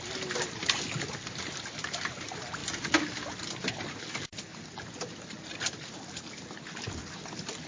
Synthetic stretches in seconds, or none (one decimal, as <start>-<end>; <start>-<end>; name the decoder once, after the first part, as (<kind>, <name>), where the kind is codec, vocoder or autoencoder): none

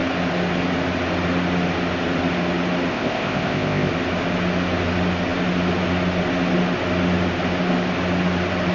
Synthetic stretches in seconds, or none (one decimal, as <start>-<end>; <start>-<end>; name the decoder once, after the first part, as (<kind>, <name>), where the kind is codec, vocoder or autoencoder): 2.9-3.9 (codec, ZipCodec)

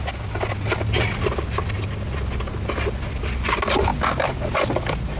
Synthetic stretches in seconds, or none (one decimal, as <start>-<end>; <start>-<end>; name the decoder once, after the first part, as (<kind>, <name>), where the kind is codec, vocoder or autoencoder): none

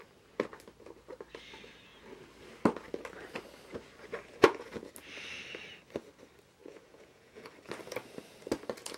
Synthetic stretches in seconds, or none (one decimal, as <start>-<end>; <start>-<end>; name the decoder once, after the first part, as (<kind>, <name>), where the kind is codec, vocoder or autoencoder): 4.4-4.9 (vocoder, Vocos); 6.6-7.5

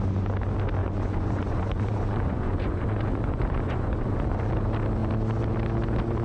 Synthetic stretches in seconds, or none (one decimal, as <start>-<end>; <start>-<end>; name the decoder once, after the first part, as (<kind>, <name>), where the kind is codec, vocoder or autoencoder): 0.8-4.5 (vocoder, Vocos)

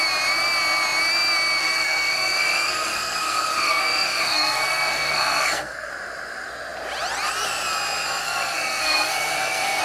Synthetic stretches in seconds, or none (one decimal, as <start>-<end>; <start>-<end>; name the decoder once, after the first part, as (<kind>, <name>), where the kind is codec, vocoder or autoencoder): 1.6-5.9 (codec, SNAC); 8.2-9.8

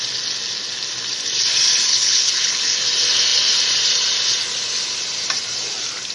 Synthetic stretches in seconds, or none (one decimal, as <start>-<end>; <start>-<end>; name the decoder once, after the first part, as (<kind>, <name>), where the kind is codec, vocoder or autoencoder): 1.9-2.8 (codec, HILCodec)

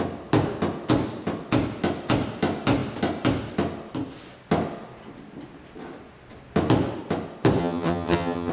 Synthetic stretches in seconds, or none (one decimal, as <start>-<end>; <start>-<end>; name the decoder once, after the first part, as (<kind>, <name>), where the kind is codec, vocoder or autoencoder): 7.6-8.5 (vocoder, HiFi-GAN)